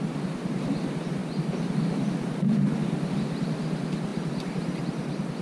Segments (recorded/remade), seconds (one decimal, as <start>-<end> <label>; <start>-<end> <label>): 0.0-5.4 recorded